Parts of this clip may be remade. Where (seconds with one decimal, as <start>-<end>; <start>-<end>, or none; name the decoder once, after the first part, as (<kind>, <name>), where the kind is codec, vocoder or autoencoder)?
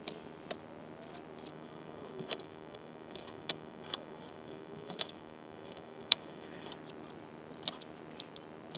1.5-6.7 (codec, DAC)